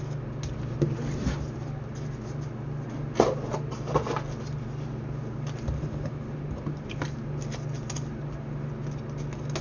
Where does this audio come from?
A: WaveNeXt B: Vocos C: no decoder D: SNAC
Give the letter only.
C